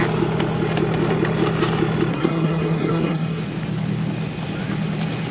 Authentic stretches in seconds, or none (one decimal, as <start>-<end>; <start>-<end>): 0.0-2.1; 3.4-5.3